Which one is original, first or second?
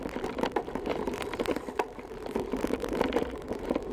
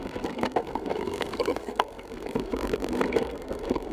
first